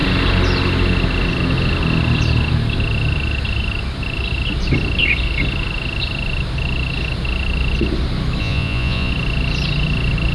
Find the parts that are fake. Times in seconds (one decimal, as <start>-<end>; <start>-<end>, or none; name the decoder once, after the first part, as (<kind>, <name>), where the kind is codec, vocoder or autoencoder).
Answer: 8.4-9.1 (vocoder, Vocos)